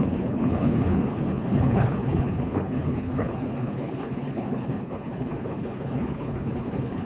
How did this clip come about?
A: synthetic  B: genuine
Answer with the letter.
A